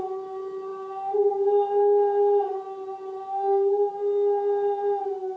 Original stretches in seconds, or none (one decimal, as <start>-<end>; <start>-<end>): 0.0-5.4